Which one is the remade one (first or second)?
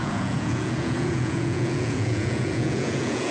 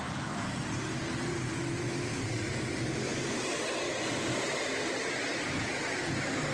first